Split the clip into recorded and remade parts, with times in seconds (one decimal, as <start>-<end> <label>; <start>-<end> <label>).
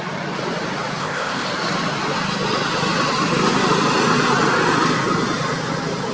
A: 0.0-1.0 recorded; 1.0-1.5 remade; 1.5-6.1 recorded